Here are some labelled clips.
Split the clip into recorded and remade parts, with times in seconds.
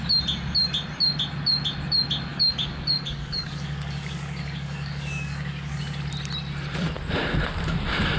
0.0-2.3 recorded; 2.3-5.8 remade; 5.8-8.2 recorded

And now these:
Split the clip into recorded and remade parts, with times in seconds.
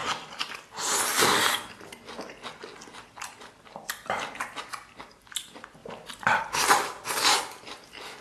0.0-5.8 recorded; 5.8-6.7 remade; 6.7-8.2 recorded